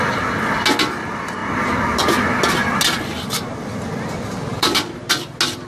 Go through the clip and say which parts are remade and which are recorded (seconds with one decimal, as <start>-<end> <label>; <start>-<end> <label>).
0.0-4.5 recorded; 4.5-5.1 remade; 5.1-5.7 recorded